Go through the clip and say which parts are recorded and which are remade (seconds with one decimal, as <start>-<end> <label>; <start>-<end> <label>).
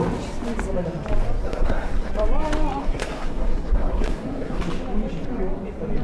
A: 0.0-1.4 recorded; 1.4-2.1 remade; 2.1-2.8 recorded; 2.8-4.6 remade; 4.6-6.0 recorded